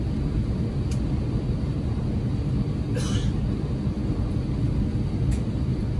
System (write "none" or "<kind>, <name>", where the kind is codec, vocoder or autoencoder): none